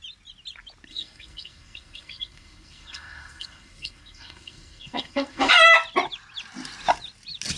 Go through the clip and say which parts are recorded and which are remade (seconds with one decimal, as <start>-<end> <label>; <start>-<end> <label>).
0.0-0.9 recorded; 0.9-5.5 remade; 5.5-7.6 recorded